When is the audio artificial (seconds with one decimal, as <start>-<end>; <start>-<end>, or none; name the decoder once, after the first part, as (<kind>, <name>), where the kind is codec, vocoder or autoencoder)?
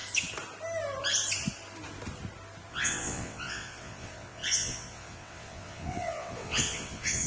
2.7-7.3 (vocoder, WaveNeXt)